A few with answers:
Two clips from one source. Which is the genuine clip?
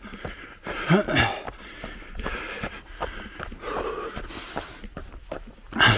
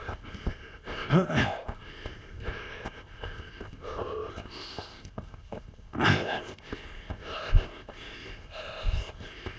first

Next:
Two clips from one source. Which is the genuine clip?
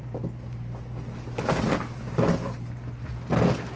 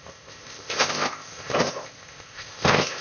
first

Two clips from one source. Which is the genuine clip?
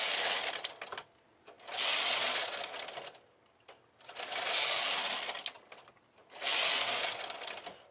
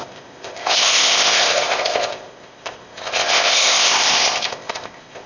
first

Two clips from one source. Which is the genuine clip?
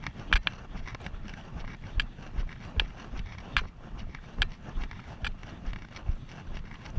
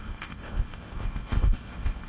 first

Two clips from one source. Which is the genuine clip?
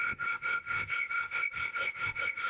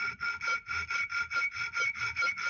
second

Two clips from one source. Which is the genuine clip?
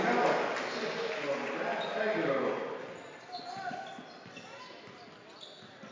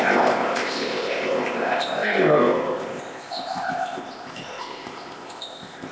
first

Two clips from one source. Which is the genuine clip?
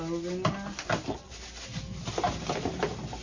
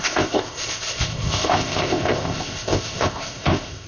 first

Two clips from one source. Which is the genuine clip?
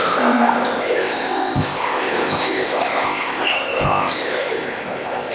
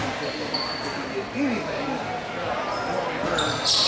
second